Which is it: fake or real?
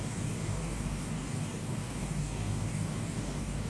fake